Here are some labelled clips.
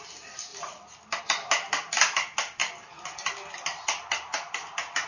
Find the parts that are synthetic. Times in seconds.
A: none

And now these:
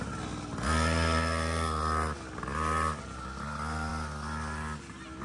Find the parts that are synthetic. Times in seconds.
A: none

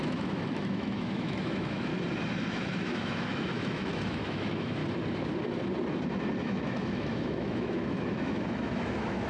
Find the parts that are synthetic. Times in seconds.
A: 0.0-1.9 (autoencoder, DAC-VAE); 2.5-4.8; 6.4-9.3